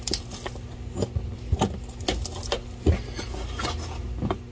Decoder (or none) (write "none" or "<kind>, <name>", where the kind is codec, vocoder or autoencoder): none